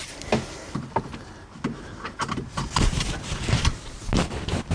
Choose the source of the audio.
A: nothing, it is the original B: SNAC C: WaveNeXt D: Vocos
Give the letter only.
A